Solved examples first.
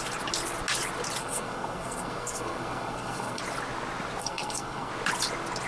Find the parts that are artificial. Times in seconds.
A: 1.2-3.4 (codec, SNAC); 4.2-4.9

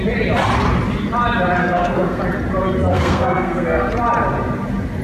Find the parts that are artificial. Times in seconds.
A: 1.6-2.2 (codec, SNAC); 2.9-3.9

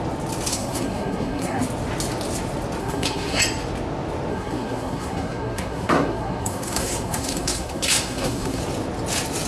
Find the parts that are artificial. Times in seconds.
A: 0.5-1.6 (codec, SNAC); 2.8-3.4; 4.3-8.6

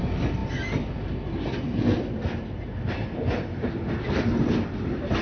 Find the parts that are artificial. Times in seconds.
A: none

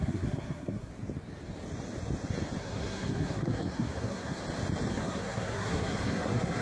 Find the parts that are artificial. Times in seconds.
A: 0.0-0.9 (codec, SNAC); 2.6-4.4; 4.9-6.6